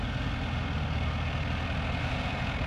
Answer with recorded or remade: recorded